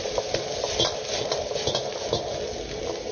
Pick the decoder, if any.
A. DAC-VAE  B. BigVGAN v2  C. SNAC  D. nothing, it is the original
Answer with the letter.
D